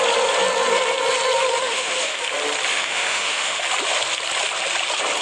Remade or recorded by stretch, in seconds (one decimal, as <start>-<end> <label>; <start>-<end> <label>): 0.0-1.6 recorded; 1.6-2.2 remade; 2.2-2.7 recorded; 2.7-3.6 remade; 3.6-5.2 recorded